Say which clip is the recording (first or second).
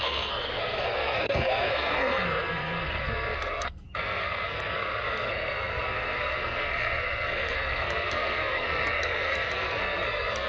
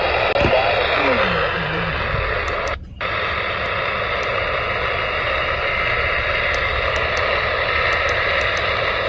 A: second